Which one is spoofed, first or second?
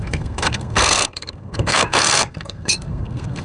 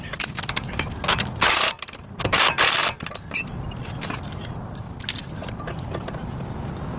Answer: first